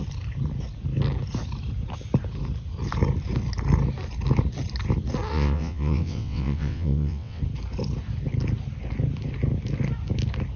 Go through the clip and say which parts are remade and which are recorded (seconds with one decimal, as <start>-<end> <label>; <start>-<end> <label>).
0.0-5.3 recorded; 5.3-7.4 remade; 7.4-10.6 recorded